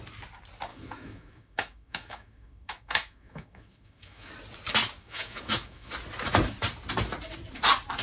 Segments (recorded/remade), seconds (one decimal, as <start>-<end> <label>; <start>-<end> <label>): 0.0-0.7 recorded; 0.7-4.3 remade; 4.3-5.0 recorded; 5.0-5.9 remade; 5.9-8.0 recorded